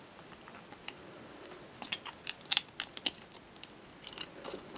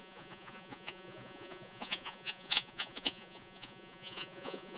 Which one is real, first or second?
first